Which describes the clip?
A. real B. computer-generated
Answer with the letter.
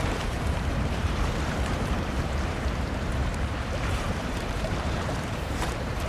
B